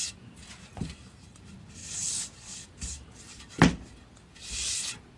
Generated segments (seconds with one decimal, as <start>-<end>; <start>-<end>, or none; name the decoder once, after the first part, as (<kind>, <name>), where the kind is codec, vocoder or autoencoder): 0.0-1.4 (vocoder, BigVGAN v2); 1.8-3.4